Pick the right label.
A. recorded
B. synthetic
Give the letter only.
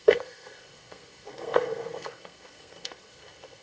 B